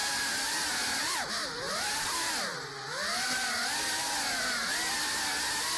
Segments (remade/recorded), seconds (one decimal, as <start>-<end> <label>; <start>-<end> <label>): 0.0-5.8 recorded